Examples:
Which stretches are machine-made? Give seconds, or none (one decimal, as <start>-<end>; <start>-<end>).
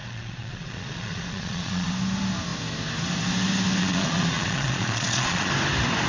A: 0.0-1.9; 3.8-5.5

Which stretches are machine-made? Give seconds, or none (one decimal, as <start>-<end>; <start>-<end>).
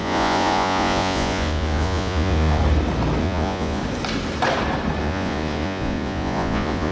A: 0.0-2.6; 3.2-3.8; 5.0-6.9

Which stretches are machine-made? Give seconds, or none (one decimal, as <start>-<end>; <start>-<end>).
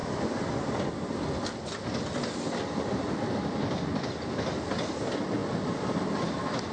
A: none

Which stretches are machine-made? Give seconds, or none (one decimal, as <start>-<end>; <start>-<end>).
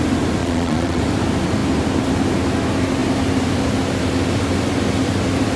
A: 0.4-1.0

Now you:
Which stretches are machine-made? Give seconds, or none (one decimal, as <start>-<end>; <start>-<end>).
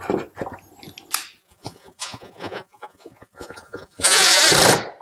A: 1.4-4.4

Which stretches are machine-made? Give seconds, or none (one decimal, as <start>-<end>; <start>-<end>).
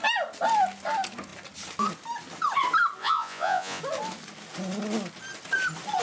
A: 3.0-3.8